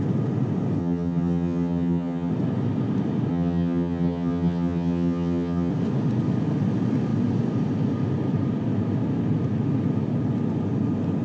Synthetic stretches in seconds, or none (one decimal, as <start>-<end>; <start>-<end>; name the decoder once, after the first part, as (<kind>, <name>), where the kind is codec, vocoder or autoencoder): 0.8-2.3 (vocoder, HiFi-GAN); 3.3-5.7